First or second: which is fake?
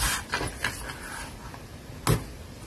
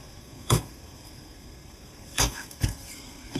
second